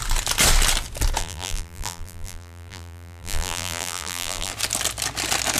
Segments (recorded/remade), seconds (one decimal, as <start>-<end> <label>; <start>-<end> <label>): 0.0-1.2 recorded; 1.2-4.5 remade; 4.5-5.6 recorded